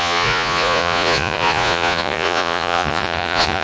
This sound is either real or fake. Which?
fake